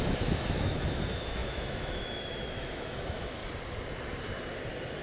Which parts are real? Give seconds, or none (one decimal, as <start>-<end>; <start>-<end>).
3.4-5.0